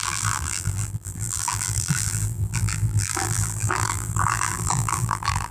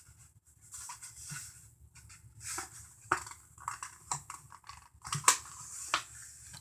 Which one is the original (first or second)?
second